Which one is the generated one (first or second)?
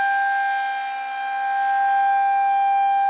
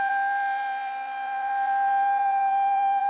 second